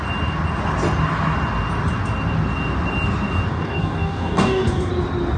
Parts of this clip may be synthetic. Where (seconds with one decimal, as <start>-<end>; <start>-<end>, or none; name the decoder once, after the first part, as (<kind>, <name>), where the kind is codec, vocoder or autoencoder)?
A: 3.5-4.9 (codec, DAC)

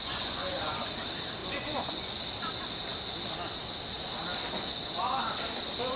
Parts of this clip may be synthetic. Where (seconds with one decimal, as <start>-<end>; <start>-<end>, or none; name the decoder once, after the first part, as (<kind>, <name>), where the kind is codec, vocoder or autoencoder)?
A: 0.0-0.9 (vocoder, Vocos); 1.4-2.2